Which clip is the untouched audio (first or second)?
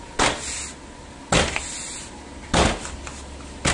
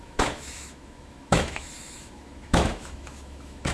first